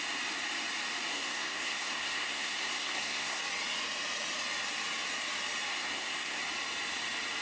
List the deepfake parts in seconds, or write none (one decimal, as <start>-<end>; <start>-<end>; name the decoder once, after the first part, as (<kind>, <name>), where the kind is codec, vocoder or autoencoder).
1.1-3.4 (codec, SNAC); 5.7-6.4